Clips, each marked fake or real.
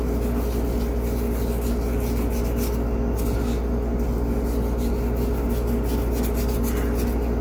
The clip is real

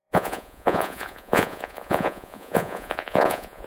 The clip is fake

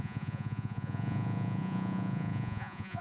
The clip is fake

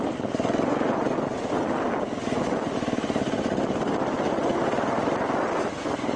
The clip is real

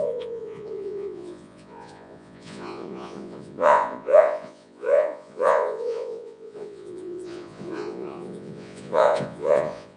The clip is fake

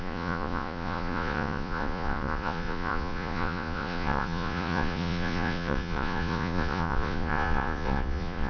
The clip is fake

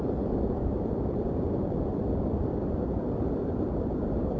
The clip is real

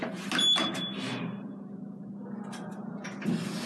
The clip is real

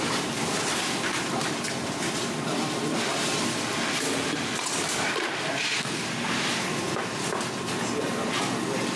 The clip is real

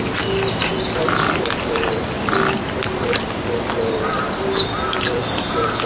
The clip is real